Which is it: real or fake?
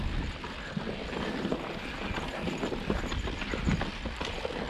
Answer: real